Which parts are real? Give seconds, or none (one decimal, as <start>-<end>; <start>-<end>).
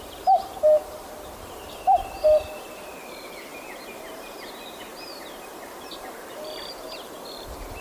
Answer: none